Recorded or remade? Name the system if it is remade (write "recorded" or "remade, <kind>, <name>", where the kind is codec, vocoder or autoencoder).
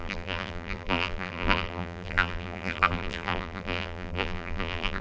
remade, vocoder, BigVGAN v2